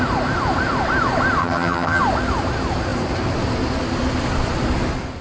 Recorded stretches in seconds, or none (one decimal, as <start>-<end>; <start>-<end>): 0.0-1.4; 2.0-5.2